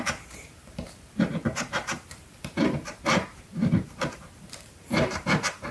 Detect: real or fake fake